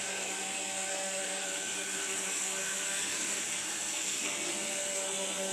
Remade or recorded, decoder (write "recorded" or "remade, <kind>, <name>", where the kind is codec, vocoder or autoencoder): remade, codec, SNAC